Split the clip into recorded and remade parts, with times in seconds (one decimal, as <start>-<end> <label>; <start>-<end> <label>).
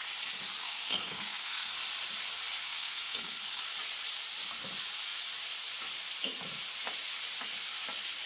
0.0-0.6 recorded; 0.6-1.7 remade; 1.7-2.6 recorded; 2.6-3.6 remade; 3.6-8.3 recorded